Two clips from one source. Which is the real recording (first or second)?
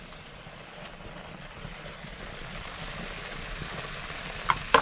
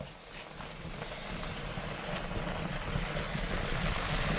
second